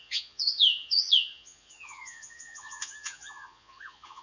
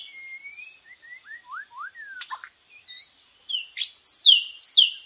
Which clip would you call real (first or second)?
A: second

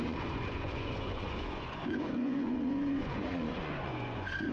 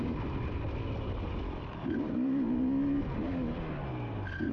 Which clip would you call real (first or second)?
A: second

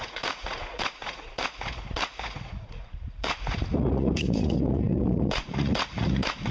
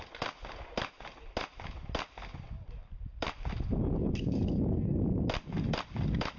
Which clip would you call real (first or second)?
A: second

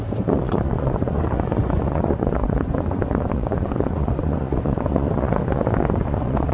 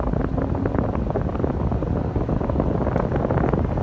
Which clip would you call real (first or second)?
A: second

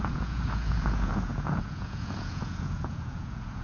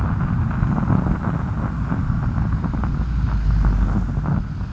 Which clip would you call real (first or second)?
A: second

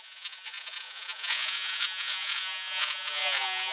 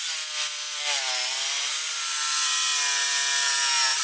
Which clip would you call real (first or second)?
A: second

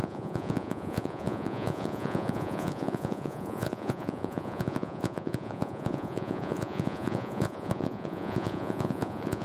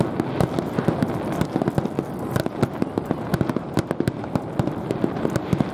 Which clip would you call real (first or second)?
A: second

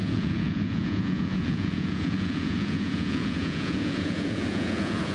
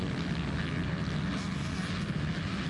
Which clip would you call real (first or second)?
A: second